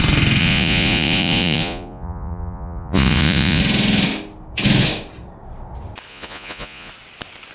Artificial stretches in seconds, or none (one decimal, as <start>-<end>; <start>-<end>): 0.4-3.6; 6.1-6.9

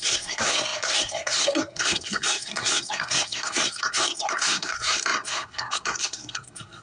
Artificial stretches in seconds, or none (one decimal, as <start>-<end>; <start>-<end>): 0.0-6.8

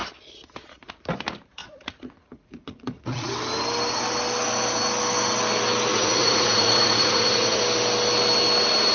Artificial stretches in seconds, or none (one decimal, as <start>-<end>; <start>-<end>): 1.6-3.3; 5.9-7.6

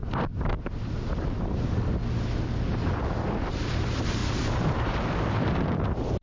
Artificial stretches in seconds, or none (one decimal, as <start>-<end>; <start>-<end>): 0.0-1.5; 4.2-6.2

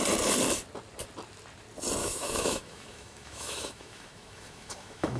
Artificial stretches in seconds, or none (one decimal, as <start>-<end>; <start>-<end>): 2.0-5.2

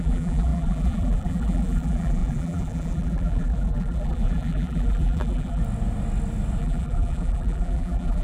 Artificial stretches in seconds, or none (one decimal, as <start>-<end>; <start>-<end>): 0.0-5.6; 6.6-8.2

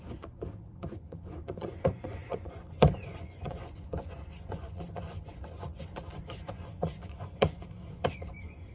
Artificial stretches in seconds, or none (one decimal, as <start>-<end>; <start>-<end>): 0.0-8.7